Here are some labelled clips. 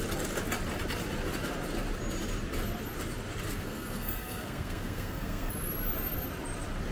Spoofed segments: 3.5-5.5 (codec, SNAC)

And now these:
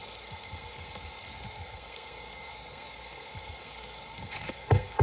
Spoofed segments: 0.0-5.0 (codec, SNAC)

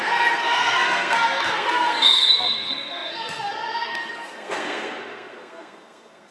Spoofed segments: 0.0-6.3 (codec, SNAC)

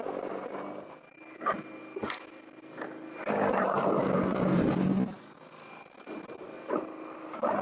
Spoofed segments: none

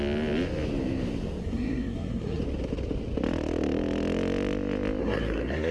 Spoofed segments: 1.4-2.4 (codec, SNAC); 5.0-5.7

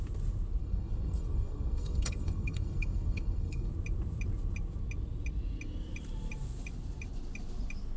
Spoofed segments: 0.6-3.7 (codec, SNAC)